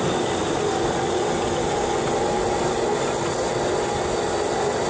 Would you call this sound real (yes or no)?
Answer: yes